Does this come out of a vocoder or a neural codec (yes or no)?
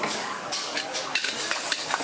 yes